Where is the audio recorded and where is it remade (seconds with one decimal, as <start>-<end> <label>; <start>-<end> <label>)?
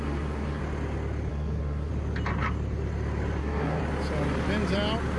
0.0-0.6 remade; 0.6-1.3 recorded; 1.3-1.9 remade; 1.9-3.4 recorded; 3.4-3.8 remade; 3.8-5.2 recorded